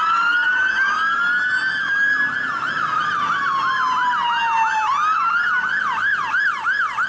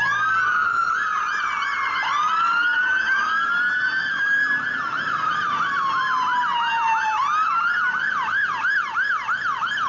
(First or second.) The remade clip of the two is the second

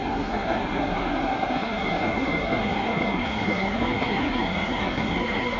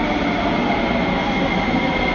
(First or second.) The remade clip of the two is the first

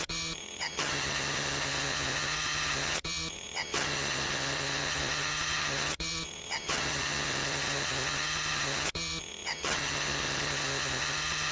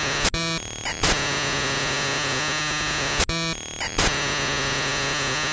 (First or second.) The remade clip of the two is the first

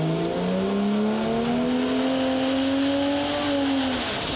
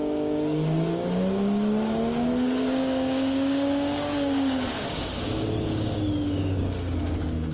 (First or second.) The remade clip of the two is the second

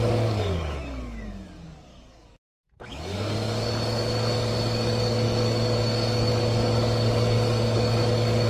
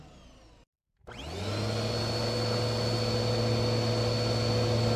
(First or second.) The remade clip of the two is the first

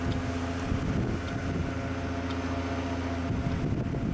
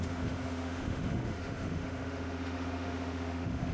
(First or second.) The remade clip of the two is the second